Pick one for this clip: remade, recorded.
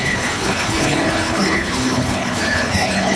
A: remade